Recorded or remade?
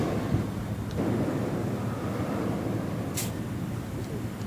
recorded